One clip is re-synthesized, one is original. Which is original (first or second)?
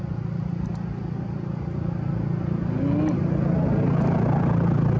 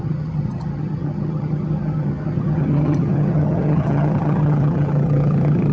first